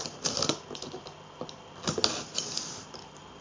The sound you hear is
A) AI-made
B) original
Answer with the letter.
B